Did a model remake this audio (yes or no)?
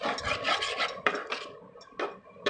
no